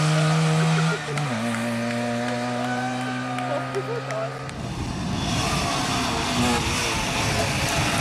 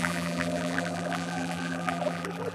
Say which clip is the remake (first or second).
second